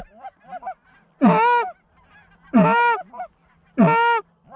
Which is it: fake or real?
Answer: real